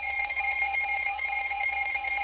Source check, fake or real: fake